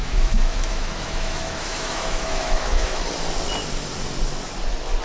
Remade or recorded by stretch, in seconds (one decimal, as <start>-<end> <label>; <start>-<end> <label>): 0.0-3.0 remade; 3.0-5.0 recorded